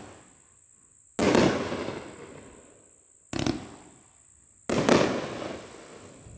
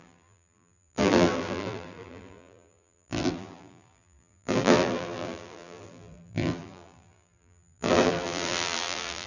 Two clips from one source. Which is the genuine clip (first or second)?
first